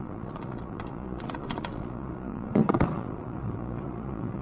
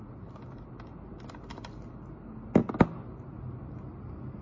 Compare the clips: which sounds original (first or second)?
second